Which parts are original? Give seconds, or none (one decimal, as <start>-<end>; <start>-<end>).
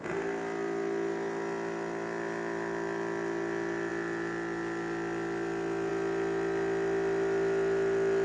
0.0-8.2